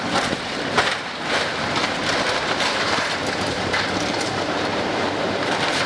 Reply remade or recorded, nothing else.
remade